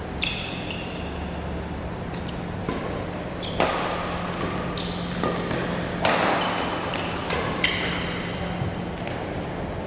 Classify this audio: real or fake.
real